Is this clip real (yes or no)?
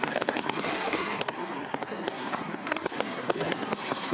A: no